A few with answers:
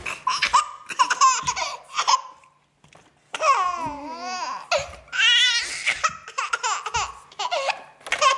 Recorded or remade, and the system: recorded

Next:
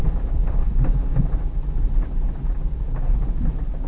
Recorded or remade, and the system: recorded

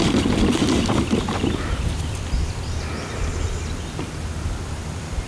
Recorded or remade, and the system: recorded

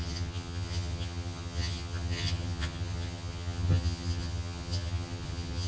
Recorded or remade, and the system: remade, vocoder, HiFi-GAN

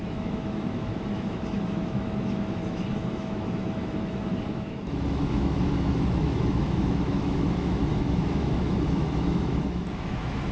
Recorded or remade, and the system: remade, autoencoder, DAC-VAE